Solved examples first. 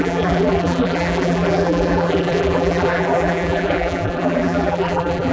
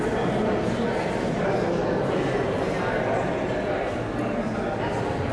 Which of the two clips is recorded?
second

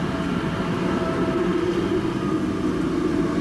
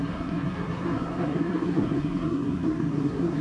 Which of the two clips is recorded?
first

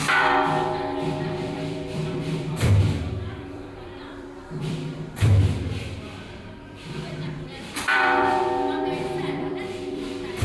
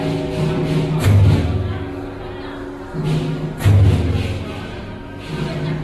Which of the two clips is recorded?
second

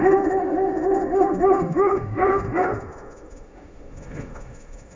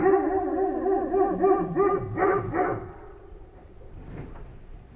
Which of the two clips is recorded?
second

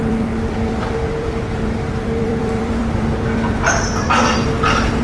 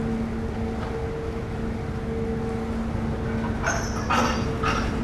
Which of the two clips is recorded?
second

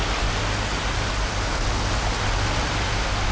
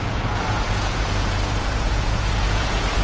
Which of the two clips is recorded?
first